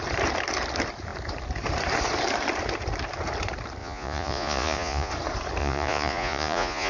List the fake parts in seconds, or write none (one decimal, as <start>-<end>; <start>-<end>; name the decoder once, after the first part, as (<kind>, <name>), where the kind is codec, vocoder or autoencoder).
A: 3.8-5.1 (vocoder, Vocos); 5.6-6.9